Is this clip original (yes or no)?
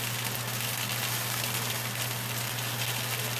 yes